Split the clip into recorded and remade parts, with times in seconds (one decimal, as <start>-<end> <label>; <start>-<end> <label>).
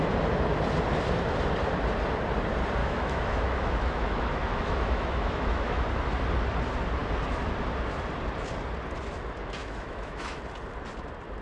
0.0-2.8 recorded; 2.8-5.8 remade; 5.8-9.6 recorded; 9.6-10.4 remade; 10.4-11.4 recorded